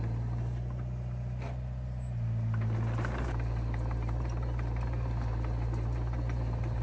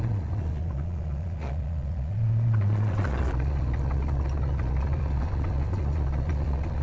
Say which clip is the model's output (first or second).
second